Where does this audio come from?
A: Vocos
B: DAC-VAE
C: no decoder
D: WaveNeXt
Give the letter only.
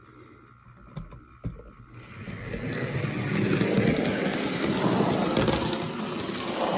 C